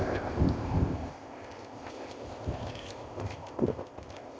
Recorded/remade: remade